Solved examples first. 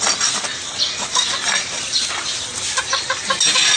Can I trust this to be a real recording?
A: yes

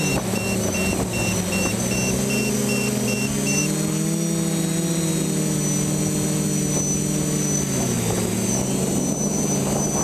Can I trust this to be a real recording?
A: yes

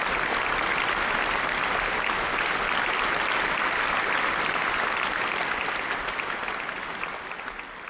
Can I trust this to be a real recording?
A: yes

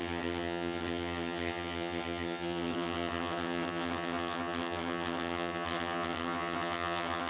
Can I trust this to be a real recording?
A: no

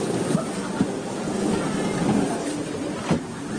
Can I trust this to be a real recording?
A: yes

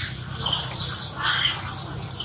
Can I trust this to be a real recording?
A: yes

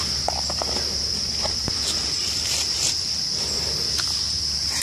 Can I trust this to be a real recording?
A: yes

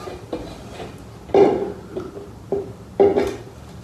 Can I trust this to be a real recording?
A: yes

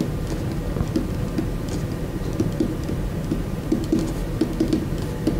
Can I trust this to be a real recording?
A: yes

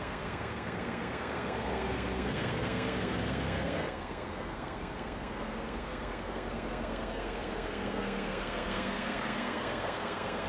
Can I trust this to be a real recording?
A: no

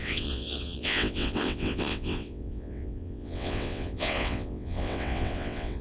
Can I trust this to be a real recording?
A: no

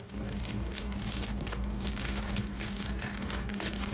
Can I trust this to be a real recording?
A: no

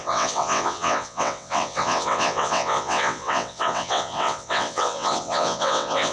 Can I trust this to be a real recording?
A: no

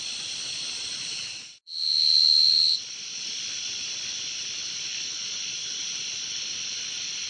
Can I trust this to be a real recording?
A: no